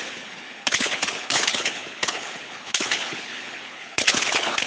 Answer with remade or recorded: remade